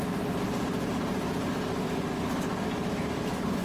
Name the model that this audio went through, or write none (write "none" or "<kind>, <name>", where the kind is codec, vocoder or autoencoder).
none